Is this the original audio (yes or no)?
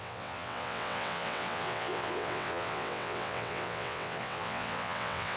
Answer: no